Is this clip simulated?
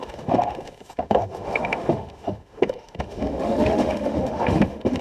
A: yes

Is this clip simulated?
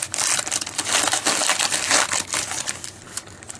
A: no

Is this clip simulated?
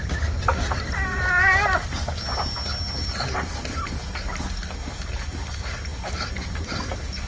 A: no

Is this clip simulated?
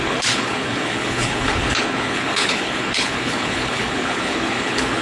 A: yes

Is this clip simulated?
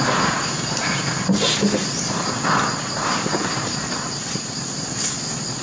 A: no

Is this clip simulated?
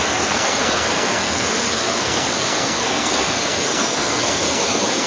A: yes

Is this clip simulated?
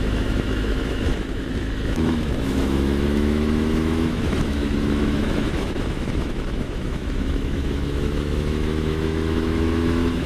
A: yes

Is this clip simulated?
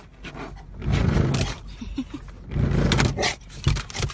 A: no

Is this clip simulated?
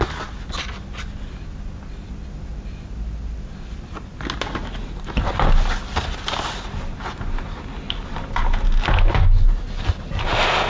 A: no